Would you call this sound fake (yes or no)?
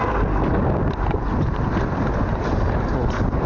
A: no